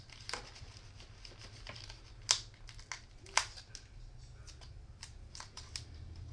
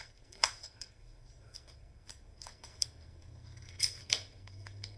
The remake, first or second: second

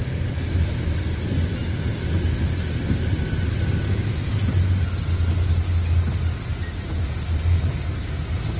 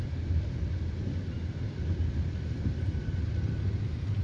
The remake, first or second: second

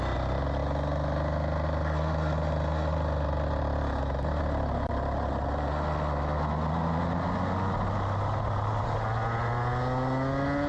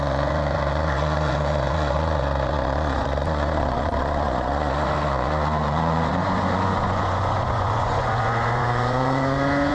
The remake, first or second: second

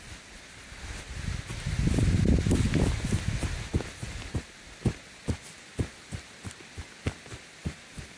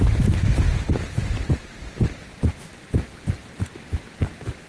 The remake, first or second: second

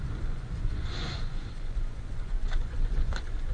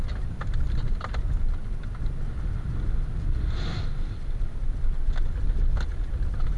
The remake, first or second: first